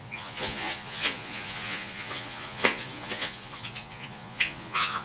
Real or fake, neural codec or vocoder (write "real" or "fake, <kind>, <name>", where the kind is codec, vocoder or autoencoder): fake, vocoder, Vocos